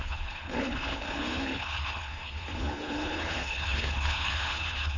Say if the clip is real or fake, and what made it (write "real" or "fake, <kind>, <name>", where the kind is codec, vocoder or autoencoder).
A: fake, codec, HILCodec